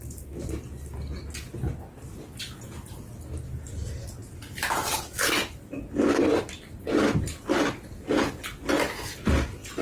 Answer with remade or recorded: recorded